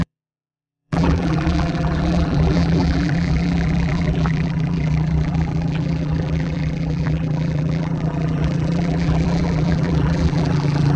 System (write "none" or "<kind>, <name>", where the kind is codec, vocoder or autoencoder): vocoder, BigVGAN v2